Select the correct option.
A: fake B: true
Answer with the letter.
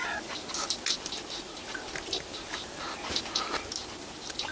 B